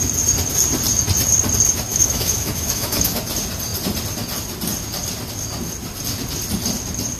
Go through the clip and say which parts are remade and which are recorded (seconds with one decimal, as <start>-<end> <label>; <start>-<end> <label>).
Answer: 0.0-1.9 recorded; 1.9-3.2 remade; 3.2-7.2 recorded

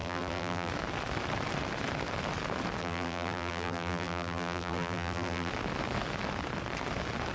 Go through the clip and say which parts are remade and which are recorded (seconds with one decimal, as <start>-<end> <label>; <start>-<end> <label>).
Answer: 0.0-0.7 remade; 0.7-2.8 recorded; 2.8-5.5 remade; 5.5-7.3 recorded